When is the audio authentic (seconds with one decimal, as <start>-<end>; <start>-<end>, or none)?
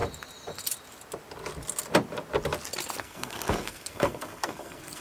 0.0-3.0